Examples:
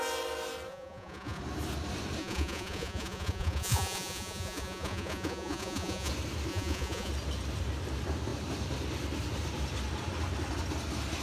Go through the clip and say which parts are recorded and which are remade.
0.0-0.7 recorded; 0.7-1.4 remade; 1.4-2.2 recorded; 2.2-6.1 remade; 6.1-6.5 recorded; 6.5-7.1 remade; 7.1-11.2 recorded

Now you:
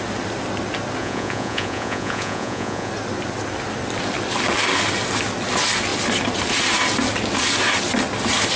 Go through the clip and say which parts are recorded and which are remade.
0.0-1.0 recorded; 1.0-2.9 remade; 2.9-8.6 recorded

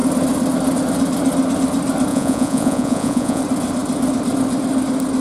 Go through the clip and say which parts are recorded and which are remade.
0.0-2.1 recorded; 2.1-3.4 remade; 3.4-5.2 recorded

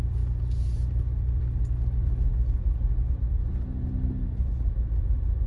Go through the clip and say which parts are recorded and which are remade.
0.0-5.5 recorded